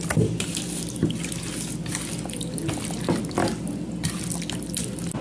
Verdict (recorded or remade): recorded